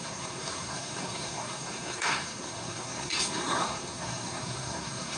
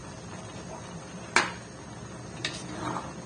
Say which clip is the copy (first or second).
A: first